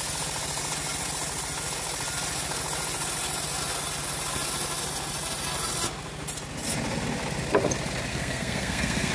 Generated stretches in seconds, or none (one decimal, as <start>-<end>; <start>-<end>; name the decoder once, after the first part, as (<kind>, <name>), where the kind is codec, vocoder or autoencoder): 8.1-9.1 (codec, SNAC)